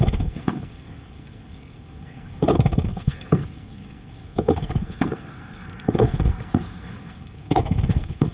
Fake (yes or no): yes